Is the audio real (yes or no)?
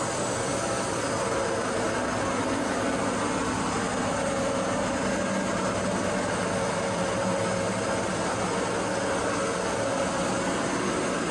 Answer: yes